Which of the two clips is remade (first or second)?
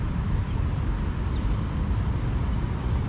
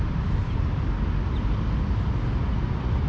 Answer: first